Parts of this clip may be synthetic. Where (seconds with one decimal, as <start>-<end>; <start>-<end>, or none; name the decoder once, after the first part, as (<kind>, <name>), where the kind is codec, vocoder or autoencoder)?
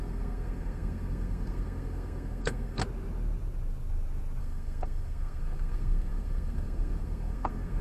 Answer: 0.0-2.8 (codec, SNAC); 4.4-7.8